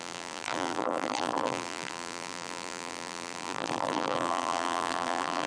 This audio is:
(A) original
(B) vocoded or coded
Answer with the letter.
B